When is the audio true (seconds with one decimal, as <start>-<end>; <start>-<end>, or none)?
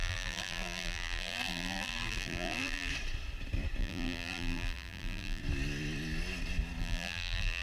2.9-3.8; 5.4-6.8